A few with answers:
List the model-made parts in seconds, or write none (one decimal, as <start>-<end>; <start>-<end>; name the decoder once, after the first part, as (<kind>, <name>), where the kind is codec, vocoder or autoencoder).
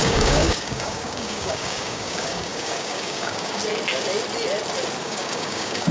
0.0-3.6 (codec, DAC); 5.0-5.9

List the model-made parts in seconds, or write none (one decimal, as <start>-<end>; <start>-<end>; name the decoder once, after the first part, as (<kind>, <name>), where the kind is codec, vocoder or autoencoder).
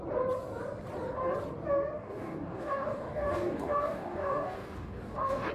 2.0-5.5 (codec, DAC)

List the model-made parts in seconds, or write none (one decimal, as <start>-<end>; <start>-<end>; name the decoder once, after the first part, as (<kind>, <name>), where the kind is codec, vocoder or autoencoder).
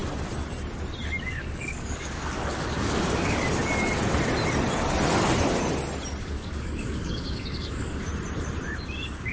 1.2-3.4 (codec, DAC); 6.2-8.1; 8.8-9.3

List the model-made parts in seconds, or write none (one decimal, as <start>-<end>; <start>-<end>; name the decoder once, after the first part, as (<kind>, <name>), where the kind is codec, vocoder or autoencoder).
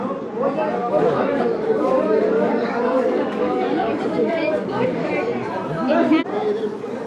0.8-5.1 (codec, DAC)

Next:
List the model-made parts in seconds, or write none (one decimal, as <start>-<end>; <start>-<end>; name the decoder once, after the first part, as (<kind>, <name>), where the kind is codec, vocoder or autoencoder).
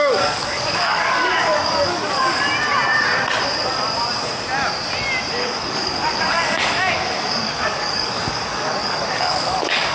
0.0-2.3 (codec, DAC); 5.3-9.9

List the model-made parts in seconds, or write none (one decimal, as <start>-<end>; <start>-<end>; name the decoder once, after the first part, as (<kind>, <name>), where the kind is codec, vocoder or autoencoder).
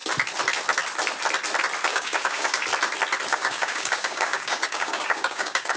1.9-2.6 (codec, DAC); 3.3-5.8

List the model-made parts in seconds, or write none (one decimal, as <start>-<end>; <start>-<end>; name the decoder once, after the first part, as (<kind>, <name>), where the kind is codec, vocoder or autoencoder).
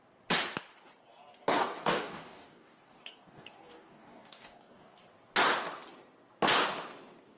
1.5-5.0 (codec, DAC)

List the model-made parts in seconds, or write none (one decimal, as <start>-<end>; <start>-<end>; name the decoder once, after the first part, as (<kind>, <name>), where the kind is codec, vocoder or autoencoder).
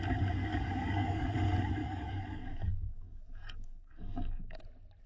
0.4-1.3 (codec, DAC); 1.8-4.6